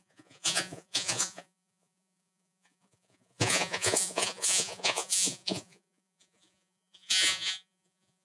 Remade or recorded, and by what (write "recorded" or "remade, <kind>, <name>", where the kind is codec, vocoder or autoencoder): remade, vocoder, Vocos